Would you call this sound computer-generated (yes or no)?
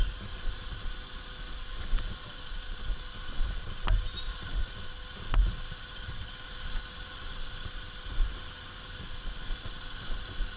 no